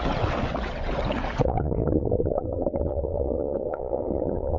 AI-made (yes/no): yes